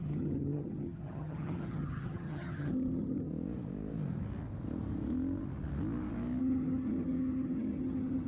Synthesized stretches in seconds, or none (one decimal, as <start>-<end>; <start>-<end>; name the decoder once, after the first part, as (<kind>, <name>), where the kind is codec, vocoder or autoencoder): 0.0-3.3 (vocoder, HiFi-GAN); 6.4-8.3